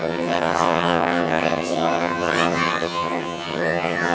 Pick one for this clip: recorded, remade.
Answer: remade